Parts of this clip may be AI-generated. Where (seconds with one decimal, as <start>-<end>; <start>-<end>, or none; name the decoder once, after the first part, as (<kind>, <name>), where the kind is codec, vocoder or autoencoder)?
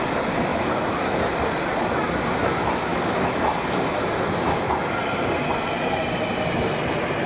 0.5-1.2 (autoencoder, DAC-VAE); 2.9-3.4